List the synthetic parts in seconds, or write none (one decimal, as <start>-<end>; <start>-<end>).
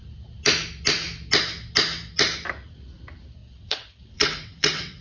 3.4-5.0